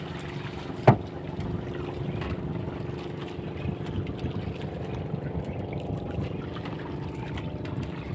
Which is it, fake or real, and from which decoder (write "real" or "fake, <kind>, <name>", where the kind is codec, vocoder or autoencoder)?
real